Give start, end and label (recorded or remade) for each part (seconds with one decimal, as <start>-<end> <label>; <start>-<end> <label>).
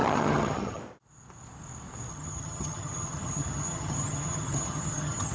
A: 0.0-0.8 remade; 0.8-2.1 recorded; 2.1-5.3 remade